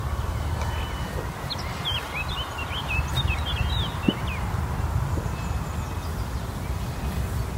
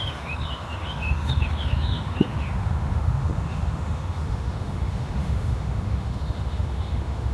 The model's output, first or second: second